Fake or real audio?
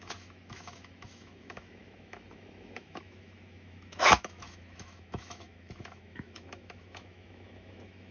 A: fake